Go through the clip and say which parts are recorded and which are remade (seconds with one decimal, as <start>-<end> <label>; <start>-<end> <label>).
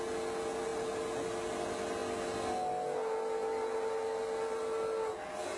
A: 0.0-5.6 recorded